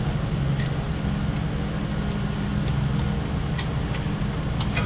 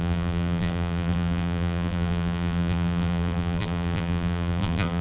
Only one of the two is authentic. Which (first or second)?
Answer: first